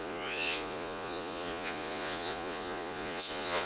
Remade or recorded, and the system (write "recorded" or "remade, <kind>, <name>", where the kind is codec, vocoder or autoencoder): remade, vocoder, Vocos